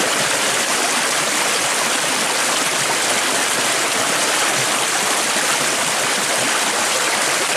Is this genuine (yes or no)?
no